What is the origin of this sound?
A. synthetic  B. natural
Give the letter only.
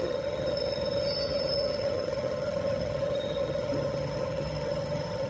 A